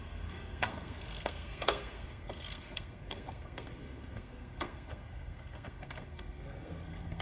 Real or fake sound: fake